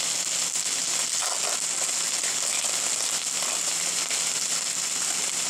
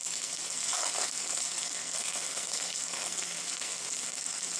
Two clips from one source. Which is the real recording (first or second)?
first